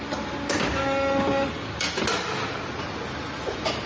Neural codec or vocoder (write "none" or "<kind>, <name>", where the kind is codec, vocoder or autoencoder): none